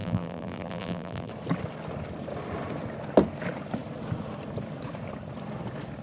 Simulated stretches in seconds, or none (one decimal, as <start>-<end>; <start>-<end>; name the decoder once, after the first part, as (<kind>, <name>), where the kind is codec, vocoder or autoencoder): 0.0-1.3 (vocoder, BigVGAN v2)